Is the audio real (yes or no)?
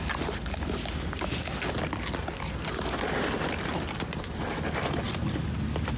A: yes